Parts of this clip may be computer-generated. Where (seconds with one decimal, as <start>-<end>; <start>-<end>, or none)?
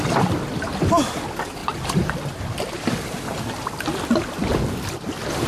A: 0.0-1.6; 4.9-5.5